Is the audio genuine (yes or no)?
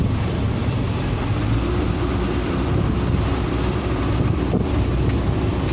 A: no